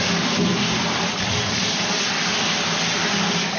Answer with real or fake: real